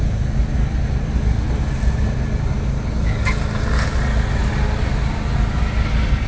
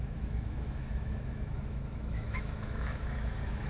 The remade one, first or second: second